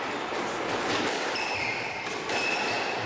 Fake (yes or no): no